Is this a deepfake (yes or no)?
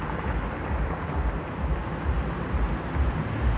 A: no